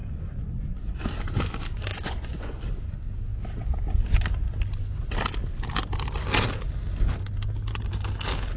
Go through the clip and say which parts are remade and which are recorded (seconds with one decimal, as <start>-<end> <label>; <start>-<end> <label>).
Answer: 0.0-1.0 remade; 1.0-1.9 recorded; 1.9-2.6 remade; 2.6-8.6 recorded